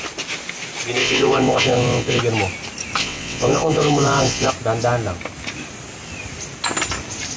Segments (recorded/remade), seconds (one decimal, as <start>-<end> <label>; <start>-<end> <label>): 0.0-1.0 recorded; 1.0-2.2 remade; 2.2-3.0 recorded; 3.0-4.5 remade; 4.5-7.4 recorded